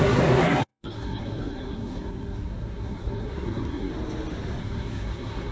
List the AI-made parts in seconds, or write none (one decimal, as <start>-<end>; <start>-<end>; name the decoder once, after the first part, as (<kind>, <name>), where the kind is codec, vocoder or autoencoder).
0.0-3.9 (codec, SNAC); 4.6-5.5